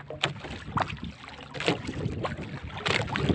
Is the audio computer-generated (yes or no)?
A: no